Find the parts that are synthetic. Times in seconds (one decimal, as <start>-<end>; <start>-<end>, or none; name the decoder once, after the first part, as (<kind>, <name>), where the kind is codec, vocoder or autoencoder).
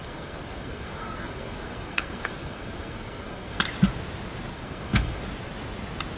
0.0-3.6 (codec, SNAC); 4.5-5.2